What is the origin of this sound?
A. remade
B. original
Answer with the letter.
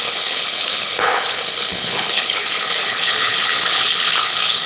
A